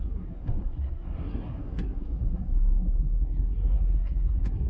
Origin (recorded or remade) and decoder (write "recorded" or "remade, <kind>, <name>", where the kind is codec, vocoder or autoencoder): remade, codec, SNAC